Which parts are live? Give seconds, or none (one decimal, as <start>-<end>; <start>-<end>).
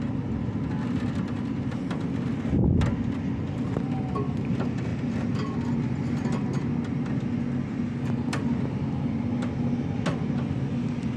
0.0-4.9; 6.1-11.2